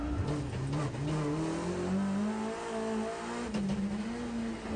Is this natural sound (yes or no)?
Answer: yes